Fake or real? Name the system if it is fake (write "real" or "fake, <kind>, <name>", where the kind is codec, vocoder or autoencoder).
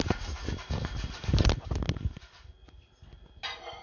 real